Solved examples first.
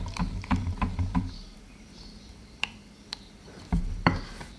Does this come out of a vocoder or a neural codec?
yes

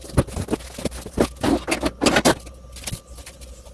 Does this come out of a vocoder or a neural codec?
no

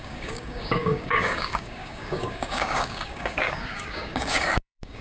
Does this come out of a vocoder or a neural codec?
yes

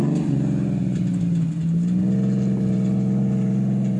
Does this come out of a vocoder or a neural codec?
no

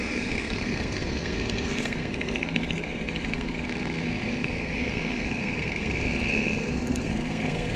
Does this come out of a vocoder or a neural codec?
yes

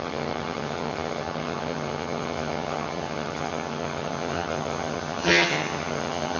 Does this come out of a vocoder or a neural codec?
yes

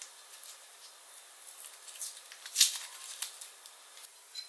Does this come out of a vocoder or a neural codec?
no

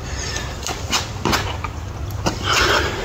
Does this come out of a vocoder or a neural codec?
no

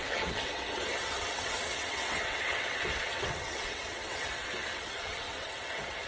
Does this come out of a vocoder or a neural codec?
yes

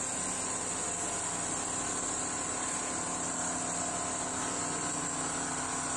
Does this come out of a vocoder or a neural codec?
no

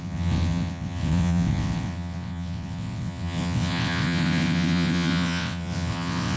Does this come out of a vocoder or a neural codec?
yes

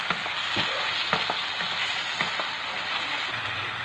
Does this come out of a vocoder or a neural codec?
no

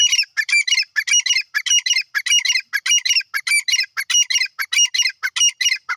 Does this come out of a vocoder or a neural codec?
no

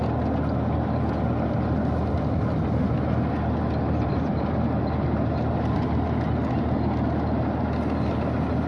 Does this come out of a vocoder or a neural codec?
no